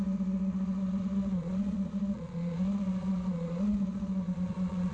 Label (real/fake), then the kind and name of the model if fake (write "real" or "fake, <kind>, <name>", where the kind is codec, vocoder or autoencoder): fake, vocoder, Vocos